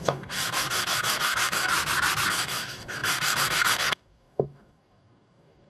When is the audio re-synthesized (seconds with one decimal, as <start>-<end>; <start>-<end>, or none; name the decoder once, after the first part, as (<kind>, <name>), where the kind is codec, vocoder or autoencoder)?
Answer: 0.0-1.7 (codec, DAC); 2.3-5.7